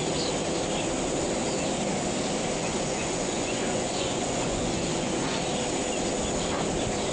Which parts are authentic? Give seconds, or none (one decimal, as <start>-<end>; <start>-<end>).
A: 0.0-2.6; 5.4-7.1